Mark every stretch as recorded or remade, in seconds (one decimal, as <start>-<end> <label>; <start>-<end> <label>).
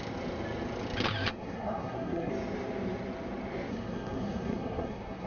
0.0-1.3 recorded; 1.3-2.3 remade; 2.3-3.7 recorded; 3.7-5.3 remade